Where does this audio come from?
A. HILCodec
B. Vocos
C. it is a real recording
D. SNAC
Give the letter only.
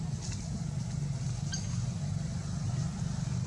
C